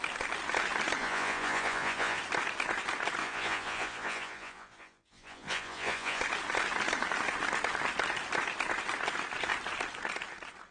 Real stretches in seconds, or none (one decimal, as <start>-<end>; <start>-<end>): 0.0-1.0; 2.2-3.2; 6.2-10.7